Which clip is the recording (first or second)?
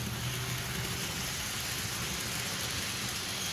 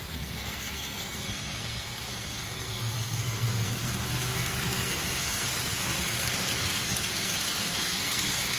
first